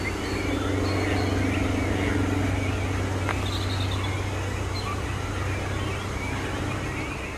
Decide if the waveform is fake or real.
real